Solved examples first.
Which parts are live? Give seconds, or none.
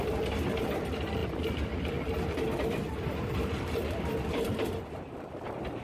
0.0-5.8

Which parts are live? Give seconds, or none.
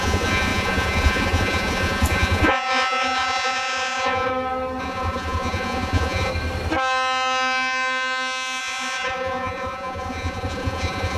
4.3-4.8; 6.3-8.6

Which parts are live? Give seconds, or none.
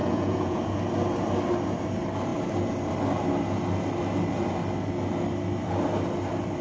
0.6-6.6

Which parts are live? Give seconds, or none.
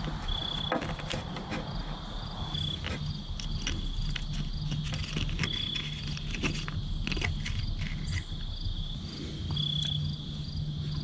0.0-11.0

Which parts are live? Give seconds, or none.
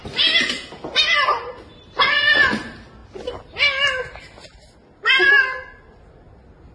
0.0-6.7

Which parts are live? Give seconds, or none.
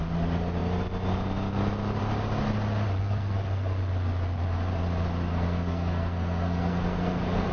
0.0-3.0; 3.9-5.3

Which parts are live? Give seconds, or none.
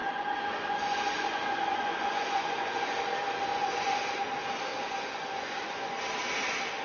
3.1-3.5; 4.2-4.7; 6.0-6.8